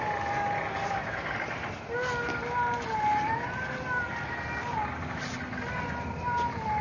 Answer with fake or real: real